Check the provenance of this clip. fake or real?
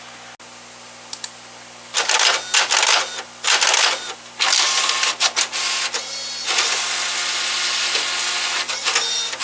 real